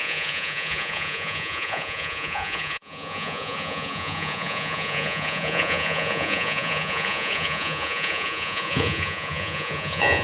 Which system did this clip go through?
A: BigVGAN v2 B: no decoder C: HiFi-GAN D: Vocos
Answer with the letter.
D